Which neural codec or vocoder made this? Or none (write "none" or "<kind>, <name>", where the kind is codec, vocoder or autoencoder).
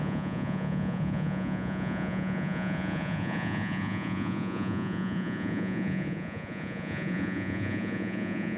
vocoder, Vocos